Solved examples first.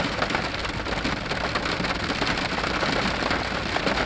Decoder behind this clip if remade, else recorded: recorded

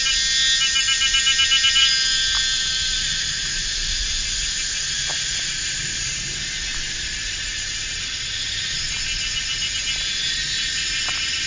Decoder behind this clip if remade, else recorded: recorded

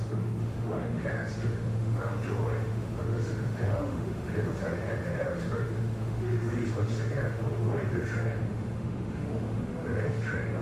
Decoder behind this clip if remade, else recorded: remade, autoencoder, DAC-VAE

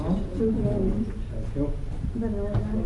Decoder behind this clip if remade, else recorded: recorded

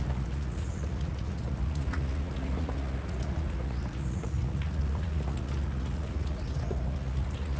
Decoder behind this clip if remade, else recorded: remade, vocoder, Vocos